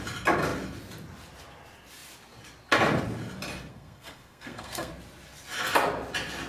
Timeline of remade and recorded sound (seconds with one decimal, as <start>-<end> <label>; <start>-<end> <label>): 0.0-3.7 recorded; 3.7-4.9 remade; 4.9-6.5 recorded